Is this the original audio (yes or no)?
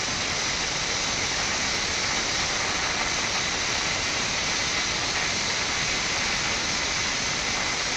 yes